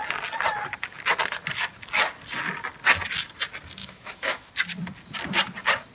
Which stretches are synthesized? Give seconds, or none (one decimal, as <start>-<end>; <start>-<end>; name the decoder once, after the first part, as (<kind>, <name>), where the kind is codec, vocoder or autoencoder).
3.8-4.5 (autoencoder, DAC-VAE)